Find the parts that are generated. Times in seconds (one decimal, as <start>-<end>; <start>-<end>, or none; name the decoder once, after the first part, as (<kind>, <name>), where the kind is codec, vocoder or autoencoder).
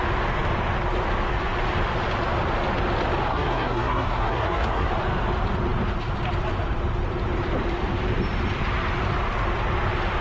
3.3-4.9 (codec, SNAC)